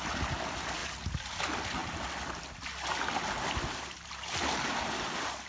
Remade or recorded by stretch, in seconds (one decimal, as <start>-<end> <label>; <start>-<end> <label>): 0.0-5.5 recorded